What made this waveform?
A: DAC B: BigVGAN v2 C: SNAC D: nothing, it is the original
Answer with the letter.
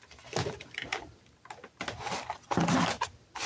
D